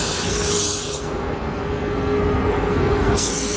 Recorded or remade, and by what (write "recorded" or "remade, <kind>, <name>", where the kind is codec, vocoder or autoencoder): remade, codec, SNAC